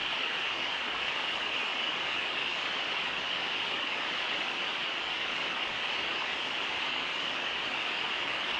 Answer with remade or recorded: remade